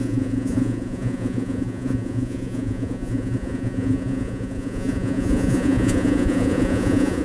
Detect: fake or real fake